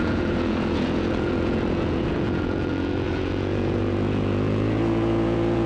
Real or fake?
fake